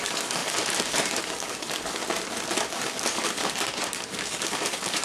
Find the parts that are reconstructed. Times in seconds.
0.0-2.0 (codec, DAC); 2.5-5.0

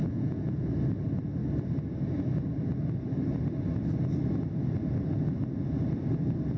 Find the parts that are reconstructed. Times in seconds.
0.0-0.7 (vocoder, Vocos)

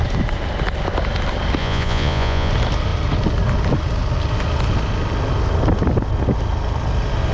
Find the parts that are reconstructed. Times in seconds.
1.6-2.5 (vocoder, Vocos)

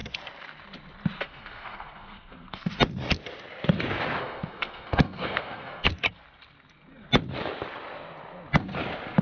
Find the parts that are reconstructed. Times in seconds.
1.2-2.7 (codec, SNAC); 4.2-5.9

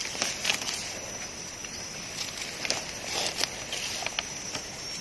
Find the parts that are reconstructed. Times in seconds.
none

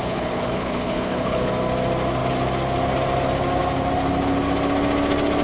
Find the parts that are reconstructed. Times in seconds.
0.0-1.5 (codec, HILCodec)

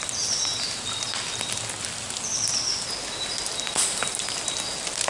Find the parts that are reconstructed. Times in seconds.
none

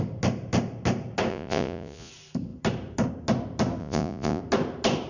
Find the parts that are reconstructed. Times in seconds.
1.3-2.1 (vocoder, Vocos); 3.8-4.4